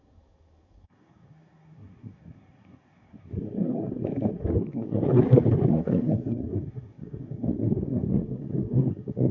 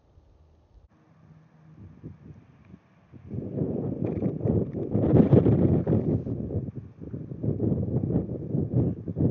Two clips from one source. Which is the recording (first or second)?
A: second